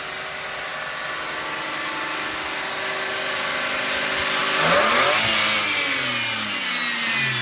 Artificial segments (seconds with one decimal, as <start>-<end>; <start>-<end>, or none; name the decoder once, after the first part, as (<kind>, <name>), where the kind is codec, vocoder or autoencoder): none